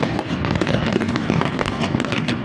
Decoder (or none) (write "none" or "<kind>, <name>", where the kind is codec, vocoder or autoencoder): codec, DAC